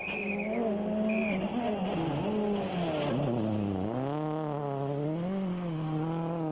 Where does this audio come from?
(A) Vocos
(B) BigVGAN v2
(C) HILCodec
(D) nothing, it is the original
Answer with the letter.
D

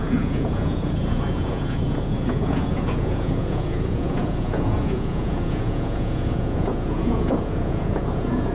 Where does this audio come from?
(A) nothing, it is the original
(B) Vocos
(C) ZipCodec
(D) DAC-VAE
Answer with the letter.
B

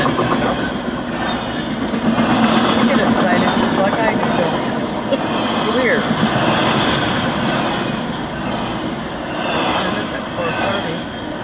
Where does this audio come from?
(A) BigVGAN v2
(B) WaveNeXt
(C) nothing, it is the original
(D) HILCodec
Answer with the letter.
C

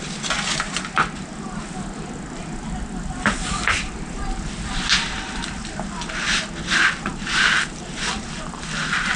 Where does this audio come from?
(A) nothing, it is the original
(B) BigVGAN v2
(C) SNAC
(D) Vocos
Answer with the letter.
A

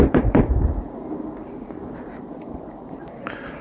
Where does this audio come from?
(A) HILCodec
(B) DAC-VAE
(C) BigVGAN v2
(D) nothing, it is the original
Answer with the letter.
C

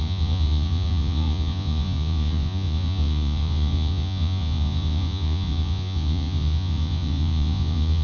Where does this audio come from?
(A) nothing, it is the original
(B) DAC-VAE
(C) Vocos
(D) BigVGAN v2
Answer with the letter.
C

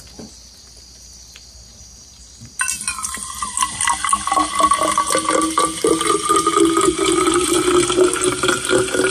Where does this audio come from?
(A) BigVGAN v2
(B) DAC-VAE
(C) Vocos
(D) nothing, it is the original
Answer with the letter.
D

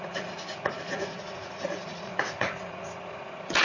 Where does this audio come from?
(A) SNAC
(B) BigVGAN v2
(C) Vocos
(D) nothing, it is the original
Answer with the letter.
C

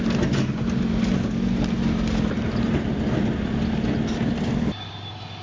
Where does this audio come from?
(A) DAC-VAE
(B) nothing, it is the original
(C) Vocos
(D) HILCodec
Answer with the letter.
B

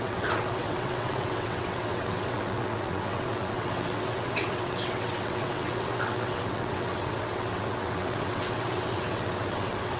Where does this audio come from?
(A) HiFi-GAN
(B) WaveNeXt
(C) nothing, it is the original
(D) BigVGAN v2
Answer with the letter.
B